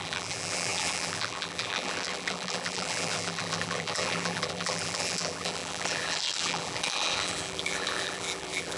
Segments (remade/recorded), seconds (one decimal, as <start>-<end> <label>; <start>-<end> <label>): 0.0-8.8 remade